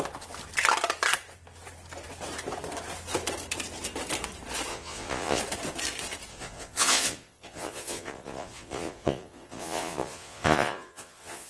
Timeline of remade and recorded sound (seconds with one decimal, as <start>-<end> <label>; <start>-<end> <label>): 0.0-4.7 recorded; 4.7-5.4 remade; 5.4-6.3 recorded; 6.3-11.5 remade